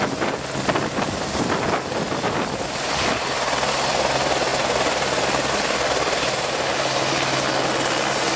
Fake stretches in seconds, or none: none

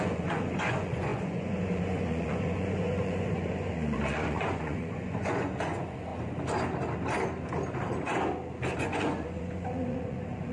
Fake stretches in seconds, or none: 0.0-6.1 (vocoder, Vocos); 8.8-10.5

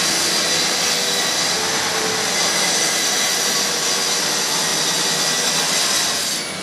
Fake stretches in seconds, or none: none

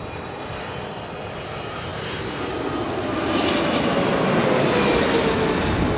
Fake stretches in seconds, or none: none

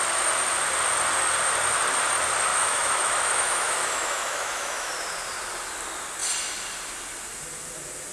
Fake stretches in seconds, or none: 2.5-4.9 (autoencoder, DAC-VAE)